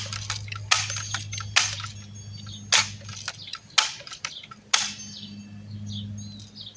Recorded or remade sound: recorded